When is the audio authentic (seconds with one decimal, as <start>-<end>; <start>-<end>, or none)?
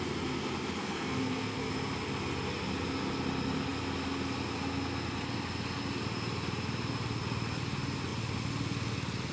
0.0-0.8; 1.7-9.3